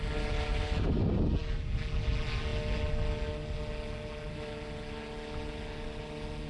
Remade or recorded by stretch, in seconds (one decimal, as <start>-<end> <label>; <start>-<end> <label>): 0.0-6.5 recorded